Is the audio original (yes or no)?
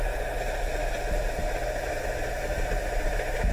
yes